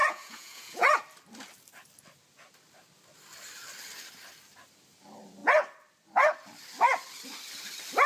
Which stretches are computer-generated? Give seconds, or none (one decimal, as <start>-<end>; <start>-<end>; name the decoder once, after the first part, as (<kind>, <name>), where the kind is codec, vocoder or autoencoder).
0.0-1.0 (vocoder, Vocos)